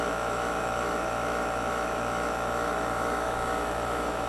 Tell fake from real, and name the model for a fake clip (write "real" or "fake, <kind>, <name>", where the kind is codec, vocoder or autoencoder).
fake, autoencoder, DAC-VAE